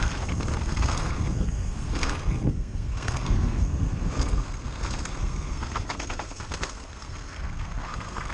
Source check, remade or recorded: remade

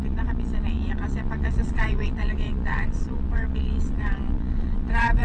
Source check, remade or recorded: remade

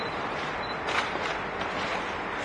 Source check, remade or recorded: recorded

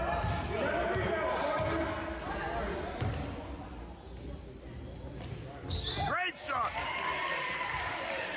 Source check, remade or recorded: recorded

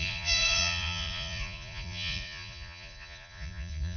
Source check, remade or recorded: remade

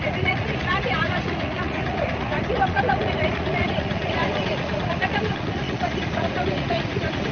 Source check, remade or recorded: remade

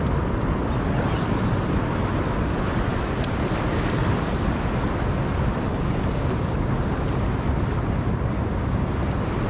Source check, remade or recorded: recorded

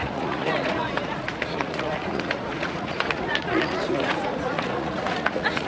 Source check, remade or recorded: remade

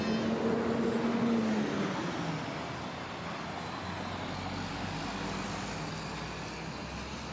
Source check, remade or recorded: recorded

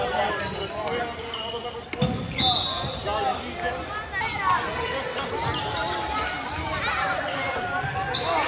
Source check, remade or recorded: recorded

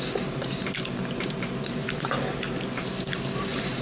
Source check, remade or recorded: recorded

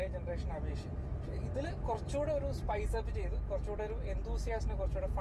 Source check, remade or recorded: recorded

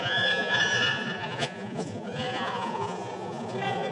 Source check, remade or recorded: remade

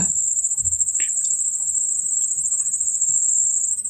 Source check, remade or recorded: recorded